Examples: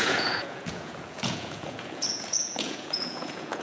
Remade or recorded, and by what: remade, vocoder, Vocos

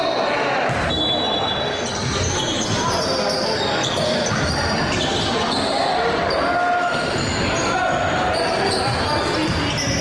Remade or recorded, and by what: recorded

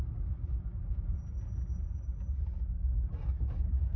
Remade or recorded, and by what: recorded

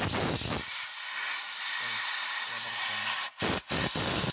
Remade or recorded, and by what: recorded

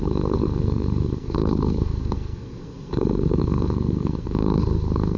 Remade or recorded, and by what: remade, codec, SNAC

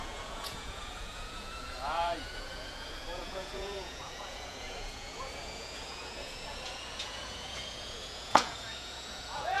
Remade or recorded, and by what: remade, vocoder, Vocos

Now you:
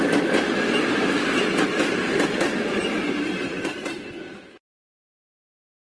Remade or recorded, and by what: recorded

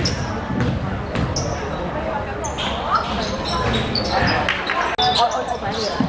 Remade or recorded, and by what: recorded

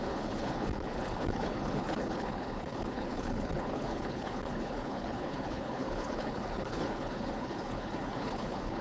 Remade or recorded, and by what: remade, codec, HILCodec